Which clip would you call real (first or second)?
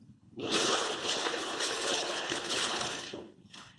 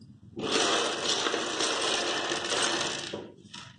second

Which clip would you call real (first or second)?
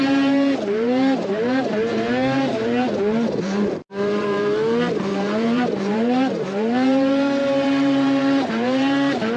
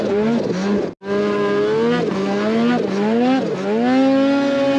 second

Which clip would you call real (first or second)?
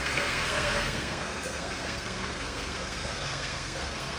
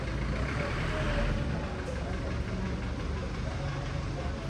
second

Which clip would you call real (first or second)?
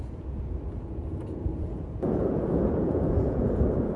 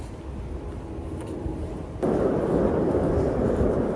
second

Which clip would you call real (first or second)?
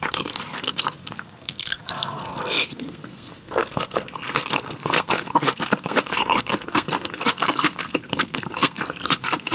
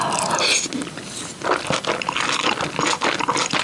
second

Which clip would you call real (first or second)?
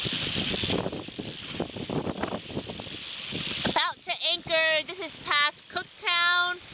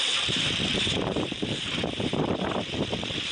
first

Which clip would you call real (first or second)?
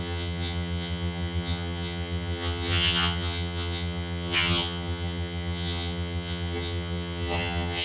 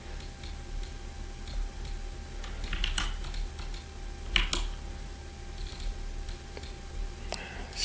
second